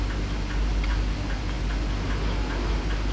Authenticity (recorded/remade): recorded